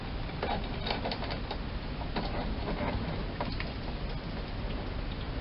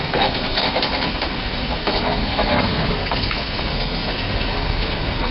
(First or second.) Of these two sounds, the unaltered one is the first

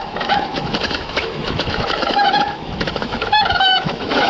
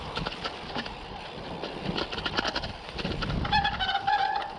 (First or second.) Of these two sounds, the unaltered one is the second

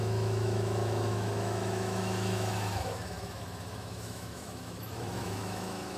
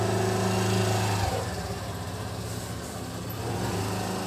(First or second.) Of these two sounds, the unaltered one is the second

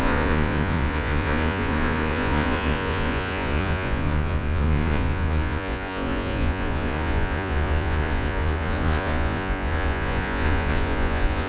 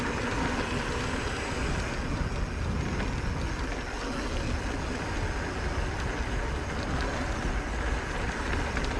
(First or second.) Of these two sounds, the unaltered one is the second